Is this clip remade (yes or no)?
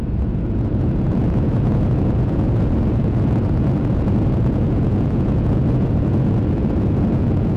yes